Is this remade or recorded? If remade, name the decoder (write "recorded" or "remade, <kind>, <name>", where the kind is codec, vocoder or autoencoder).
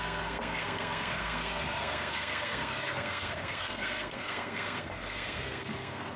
remade, codec, SNAC